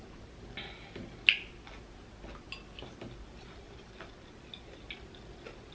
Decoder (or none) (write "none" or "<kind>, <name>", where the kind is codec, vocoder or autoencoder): none